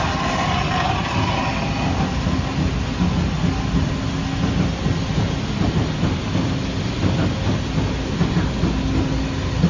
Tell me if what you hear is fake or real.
real